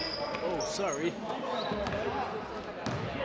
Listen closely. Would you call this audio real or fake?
real